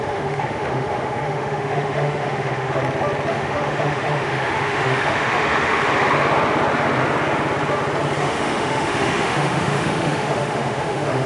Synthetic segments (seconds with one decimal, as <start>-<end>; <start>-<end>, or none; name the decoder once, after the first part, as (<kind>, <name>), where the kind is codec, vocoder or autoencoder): 0.0-2.8 (autoencoder, DAC-VAE); 3.3-5.9; 8.2-11.3